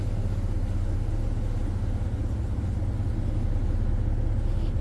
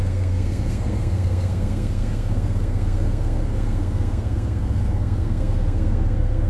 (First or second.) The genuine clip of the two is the first